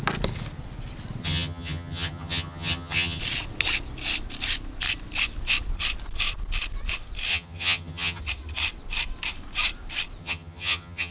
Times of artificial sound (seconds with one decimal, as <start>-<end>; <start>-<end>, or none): 1.2-3.2; 7.3-8.2; 10.2-11.1